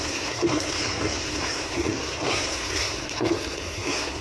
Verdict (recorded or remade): remade